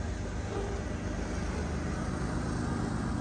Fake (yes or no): no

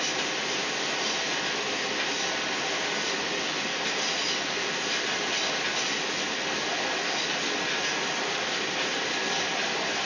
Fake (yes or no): no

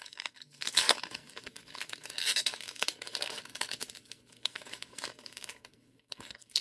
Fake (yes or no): yes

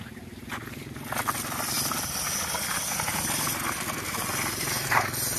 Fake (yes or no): no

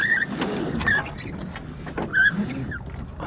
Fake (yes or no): no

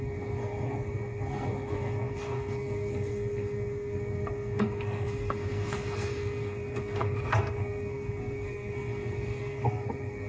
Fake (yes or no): yes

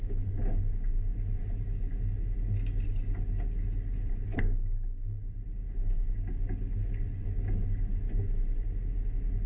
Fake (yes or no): no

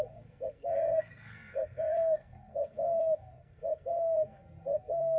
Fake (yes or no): yes